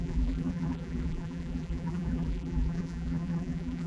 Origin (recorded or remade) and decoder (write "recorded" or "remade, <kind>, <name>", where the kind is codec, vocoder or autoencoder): remade, vocoder, BigVGAN v2